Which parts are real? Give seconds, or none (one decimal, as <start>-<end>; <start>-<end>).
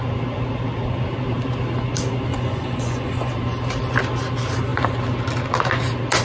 0.0-2.3; 3.3-6.2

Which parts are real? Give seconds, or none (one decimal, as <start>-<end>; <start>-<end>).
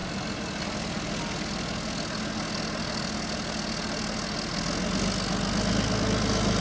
0.0-6.6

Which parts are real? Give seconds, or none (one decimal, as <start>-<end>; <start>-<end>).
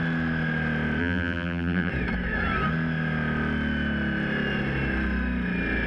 0.0-1.0; 1.9-5.9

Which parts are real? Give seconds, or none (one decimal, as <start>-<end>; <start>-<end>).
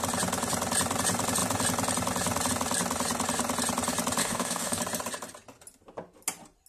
0.0-4.2; 4.8-6.7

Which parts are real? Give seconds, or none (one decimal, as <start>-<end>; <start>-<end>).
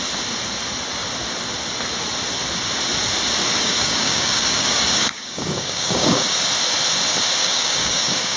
0.0-3.6; 6.4-7.4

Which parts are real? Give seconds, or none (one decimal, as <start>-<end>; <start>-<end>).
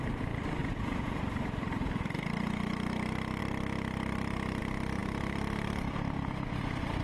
0.0-0.6; 1.2-7.0